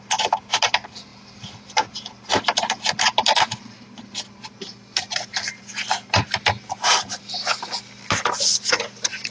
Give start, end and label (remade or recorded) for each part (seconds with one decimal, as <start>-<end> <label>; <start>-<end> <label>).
0.0-9.3 recorded